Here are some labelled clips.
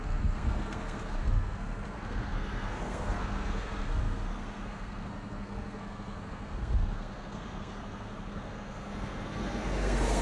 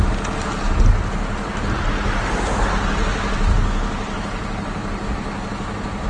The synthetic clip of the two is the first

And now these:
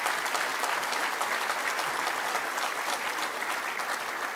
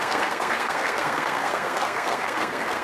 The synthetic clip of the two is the second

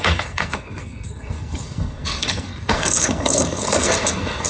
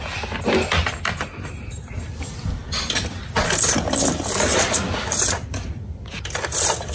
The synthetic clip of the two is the first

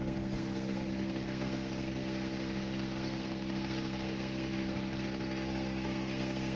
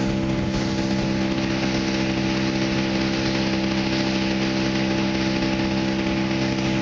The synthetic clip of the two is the first